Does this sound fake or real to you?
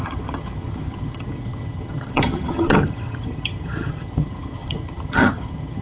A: fake